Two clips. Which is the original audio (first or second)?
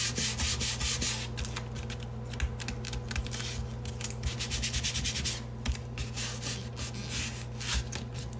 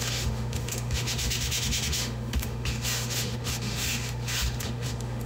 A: first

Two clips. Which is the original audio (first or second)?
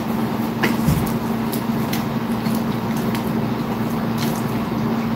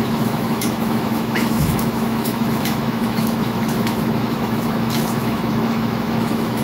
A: first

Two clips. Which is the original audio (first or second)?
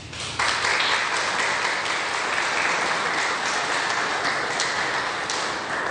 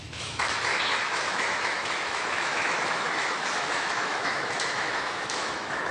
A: first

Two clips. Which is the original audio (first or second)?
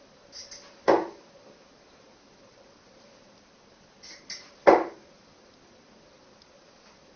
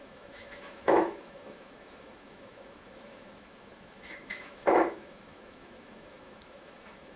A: first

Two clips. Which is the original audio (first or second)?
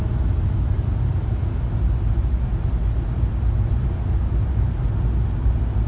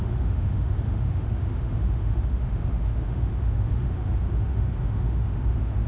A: first